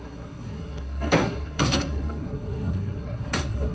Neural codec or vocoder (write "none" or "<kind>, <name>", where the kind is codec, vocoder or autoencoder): codec, SNAC